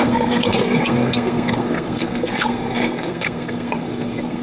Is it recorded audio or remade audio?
remade